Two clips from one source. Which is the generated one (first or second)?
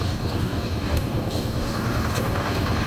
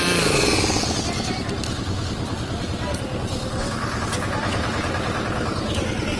first